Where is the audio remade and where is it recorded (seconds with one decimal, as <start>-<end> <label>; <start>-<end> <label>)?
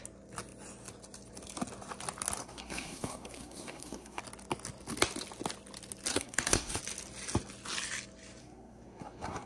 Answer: 0.0-2.4 recorded; 2.4-4.2 remade; 4.2-6.1 recorded; 6.1-6.8 remade; 6.8-8.4 recorded; 8.4-9.5 remade